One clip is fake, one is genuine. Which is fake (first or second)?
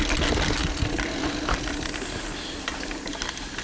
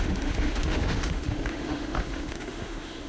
second